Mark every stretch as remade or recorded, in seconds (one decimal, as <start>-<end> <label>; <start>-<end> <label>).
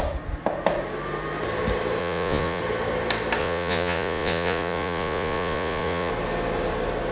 0.0-2.0 recorded; 2.0-2.6 remade; 2.6-3.4 recorded; 3.4-6.1 remade; 6.1-7.1 recorded